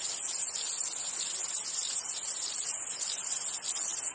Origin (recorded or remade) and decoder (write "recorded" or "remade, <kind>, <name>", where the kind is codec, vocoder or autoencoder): recorded